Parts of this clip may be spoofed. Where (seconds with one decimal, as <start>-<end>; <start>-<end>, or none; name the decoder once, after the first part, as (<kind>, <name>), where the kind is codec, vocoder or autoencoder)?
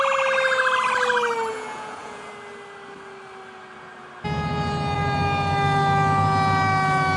1.5-2.3 (vocoder, Vocos)